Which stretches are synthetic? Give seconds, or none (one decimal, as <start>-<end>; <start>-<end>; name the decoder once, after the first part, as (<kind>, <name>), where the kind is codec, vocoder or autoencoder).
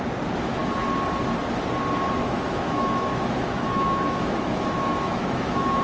2.2-5.8 (autoencoder, DAC-VAE)